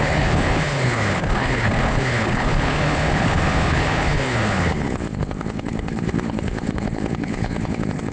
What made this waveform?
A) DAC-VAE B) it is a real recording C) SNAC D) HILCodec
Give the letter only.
D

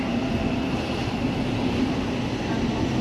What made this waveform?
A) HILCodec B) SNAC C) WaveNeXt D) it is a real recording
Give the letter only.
D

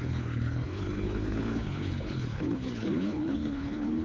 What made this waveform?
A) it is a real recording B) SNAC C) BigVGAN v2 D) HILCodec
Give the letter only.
D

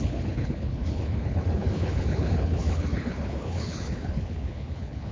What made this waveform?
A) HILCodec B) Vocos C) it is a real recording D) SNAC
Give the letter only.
A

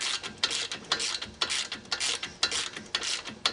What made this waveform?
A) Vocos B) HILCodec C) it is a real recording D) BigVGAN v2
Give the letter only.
C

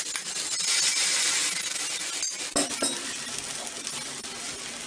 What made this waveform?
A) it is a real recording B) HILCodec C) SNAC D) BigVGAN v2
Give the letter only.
A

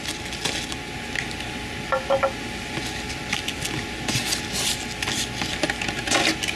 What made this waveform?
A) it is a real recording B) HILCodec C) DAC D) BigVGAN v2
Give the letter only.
A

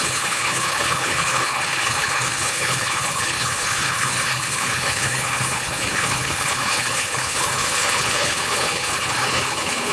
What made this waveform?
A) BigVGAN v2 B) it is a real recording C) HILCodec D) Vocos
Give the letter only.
C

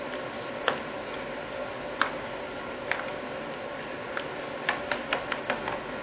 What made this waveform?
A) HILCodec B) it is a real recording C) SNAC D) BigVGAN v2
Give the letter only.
B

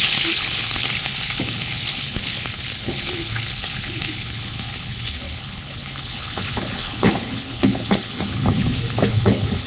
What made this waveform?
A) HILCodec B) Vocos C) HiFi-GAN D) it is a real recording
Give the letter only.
A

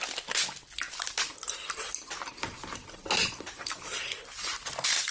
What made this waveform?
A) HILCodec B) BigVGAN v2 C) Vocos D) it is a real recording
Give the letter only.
D